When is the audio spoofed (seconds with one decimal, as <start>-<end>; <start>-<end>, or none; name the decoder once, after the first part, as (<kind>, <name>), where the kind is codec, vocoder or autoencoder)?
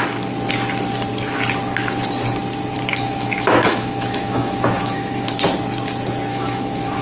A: 2.9-5.3 (autoencoder, DAC-VAE); 6.3-7.0